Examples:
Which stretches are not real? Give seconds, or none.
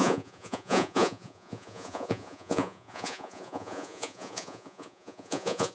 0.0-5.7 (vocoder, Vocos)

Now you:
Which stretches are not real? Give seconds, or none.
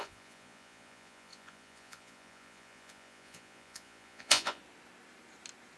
0.0-4.6 (vocoder, Vocos)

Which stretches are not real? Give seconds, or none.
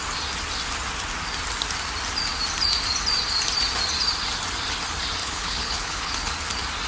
5.2-6.3 (codec, HILCodec)